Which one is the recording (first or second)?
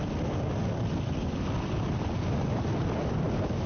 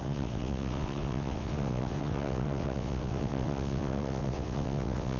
first